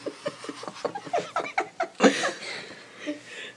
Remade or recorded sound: recorded